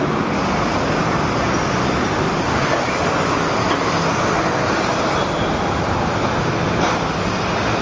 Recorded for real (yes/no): yes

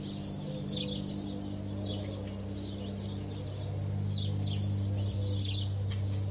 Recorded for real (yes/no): yes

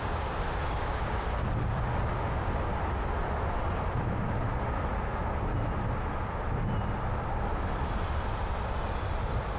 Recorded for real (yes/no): yes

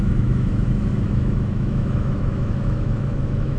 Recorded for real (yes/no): no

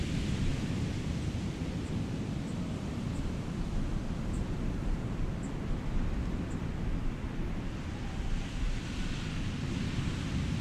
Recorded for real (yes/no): yes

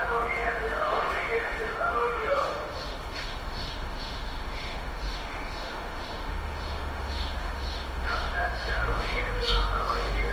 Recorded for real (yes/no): no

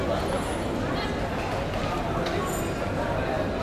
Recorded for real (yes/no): yes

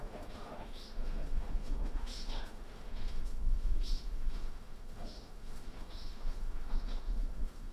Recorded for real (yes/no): no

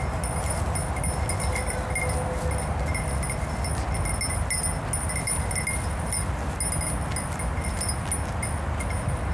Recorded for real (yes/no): yes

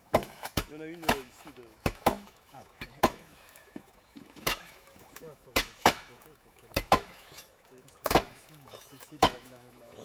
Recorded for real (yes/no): no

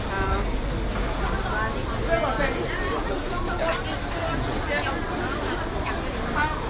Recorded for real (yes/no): yes